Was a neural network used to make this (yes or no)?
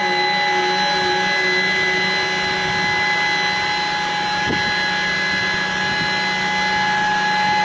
no